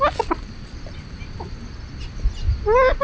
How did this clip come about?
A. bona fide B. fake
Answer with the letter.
A